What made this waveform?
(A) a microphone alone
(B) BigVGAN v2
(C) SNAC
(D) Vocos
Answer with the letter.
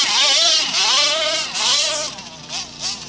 B